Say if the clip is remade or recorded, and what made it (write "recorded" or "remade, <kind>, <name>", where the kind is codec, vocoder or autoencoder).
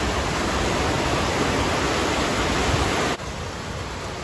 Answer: recorded